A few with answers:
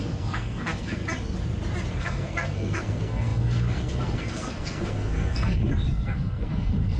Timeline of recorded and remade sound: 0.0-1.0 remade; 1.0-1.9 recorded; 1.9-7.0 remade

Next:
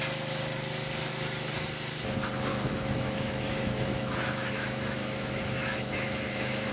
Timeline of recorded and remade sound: 0.0-2.5 recorded; 2.5-6.7 remade

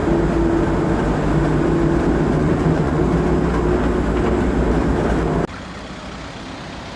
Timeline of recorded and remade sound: 0.0-2.3 recorded; 2.3-3.0 remade; 3.0-7.0 recorded

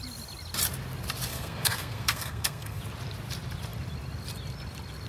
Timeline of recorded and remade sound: 0.0-1.3 recorded; 1.3-2.8 remade; 2.8-5.1 recorded

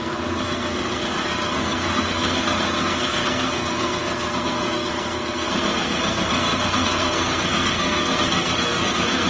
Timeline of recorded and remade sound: 0.0-9.3 remade

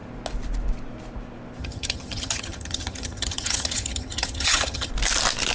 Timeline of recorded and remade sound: 0.0-1.6 recorded; 1.6-4.9 remade; 4.9-5.5 recorded

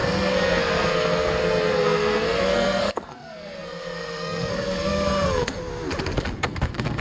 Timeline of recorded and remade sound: 0.0-5.6 remade; 5.6-6.2 recorded; 6.2-7.0 remade

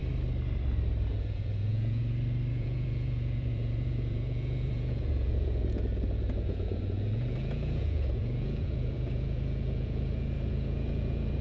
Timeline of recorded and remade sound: 0.0-1.1 recorded; 1.1-2.0 remade; 2.0-2.5 recorded; 2.5-11.4 remade